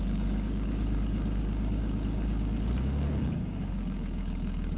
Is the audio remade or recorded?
remade